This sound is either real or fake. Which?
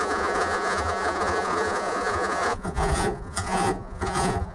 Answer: fake